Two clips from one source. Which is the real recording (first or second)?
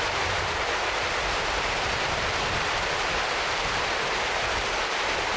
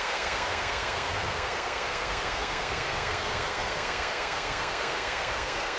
first